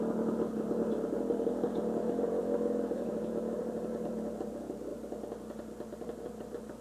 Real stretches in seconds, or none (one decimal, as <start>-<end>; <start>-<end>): 0.0-2.0; 3.6-6.8